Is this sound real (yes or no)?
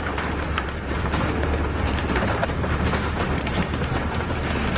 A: no